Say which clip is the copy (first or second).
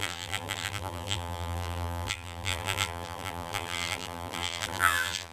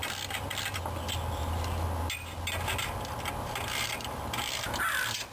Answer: first